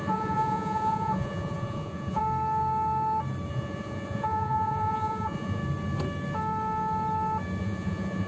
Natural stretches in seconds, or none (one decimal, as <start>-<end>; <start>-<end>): 2.2-3.5; 5.6-7.6